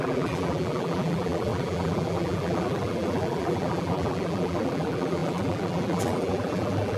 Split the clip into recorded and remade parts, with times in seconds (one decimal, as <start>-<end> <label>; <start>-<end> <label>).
0.0-7.0 remade